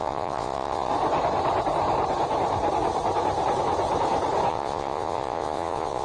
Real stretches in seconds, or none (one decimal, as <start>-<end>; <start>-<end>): 0.9-4.5